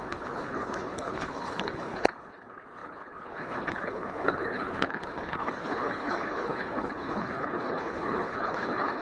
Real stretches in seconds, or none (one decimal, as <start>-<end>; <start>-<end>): none